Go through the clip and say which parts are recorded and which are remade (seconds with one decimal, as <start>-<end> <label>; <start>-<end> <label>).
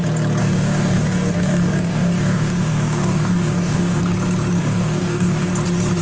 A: 0.0-0.4 recorded; 0.4-4.0 remade; 4.0-4.6 recorded; 4.6-5.5 remade; 5.5-6.0 recorded